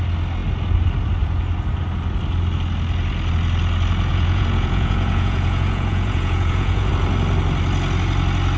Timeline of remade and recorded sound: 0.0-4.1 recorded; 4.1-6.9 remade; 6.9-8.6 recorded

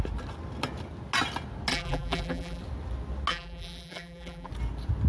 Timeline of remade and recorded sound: 0.0-1.7 recorded; 1.7-2.6 remade; 2.6-3.3 recorded; 3.3-4.5 remade; 4.5-5.1 recorded

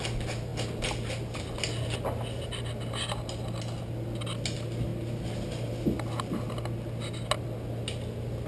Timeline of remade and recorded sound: 0.0-8.5 recorded

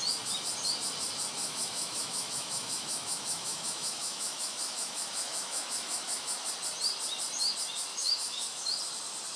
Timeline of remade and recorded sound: 0.0-1.4 recorded; 1.4-6.5 remade; 6.5-7.9 recorded; 7.9-8.8 remade; 8.8-9.4 recorded

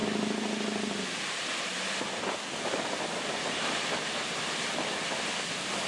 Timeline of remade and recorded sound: 0.0-5.9 recorded

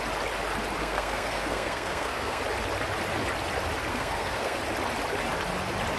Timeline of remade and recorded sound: 0.0-0.8 recorded; 0.8-2.4 remade; 2.4-3.9 recorded; 3.9-4.6 remade; 4.6-6.0 recorded

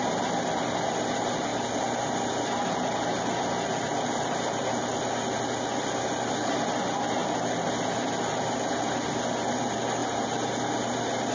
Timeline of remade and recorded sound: 0.0-11.3 recorded